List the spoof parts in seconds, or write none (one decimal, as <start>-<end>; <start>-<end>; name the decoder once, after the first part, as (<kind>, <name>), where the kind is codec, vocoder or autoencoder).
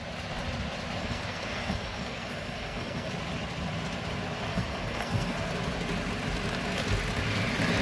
1.0-3.1 (codec, SNAC); 4.5-5.5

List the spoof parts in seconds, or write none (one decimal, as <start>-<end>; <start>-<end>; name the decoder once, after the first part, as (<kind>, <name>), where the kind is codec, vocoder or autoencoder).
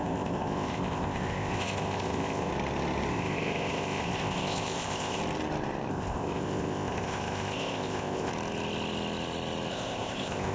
0.0-2.5 (codec, ZipCodec); 3.1-5.2; 5.9-8.3; 9.7-10.5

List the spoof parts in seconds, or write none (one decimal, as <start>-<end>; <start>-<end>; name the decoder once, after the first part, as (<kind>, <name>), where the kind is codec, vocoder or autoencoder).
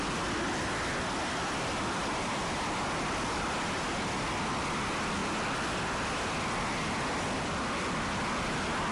none